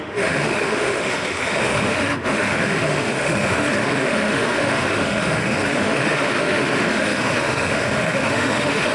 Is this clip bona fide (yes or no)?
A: no